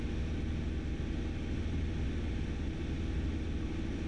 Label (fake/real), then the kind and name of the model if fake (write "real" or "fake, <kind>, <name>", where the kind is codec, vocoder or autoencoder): real